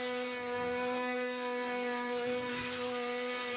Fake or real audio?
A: fake